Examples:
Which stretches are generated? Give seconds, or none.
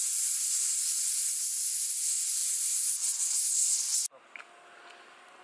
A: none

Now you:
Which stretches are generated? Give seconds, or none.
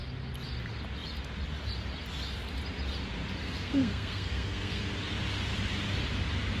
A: 3.4-4.8 (codec, SNAC)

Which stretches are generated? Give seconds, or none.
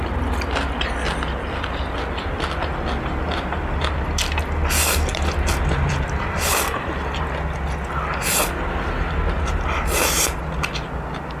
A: 5.1-7.2 (vocoder, BigVGAN v2)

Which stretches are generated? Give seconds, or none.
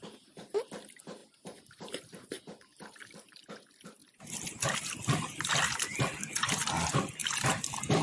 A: none